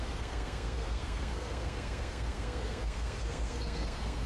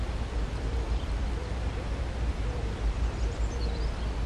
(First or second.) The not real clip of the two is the first